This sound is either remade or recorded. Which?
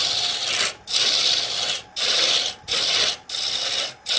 recorded